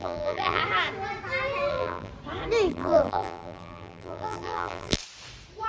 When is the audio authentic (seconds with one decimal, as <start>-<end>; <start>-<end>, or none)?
0.6-1.7; 2.1-2.7; 5.0-5.7